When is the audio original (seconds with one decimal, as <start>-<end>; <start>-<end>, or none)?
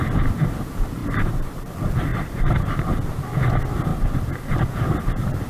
0.0-1.0; 1.7-2.1; 2.9-3.9; 4.7-5.5